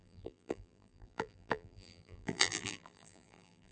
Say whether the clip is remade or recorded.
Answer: remade